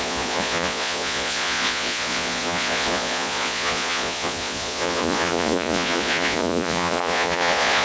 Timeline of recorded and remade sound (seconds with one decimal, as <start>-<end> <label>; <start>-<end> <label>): 0.0-7.8 remade